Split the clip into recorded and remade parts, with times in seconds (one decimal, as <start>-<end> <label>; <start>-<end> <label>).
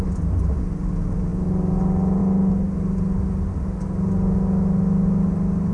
0.0-5.7 recorded